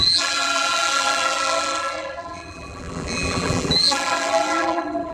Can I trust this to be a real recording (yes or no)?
no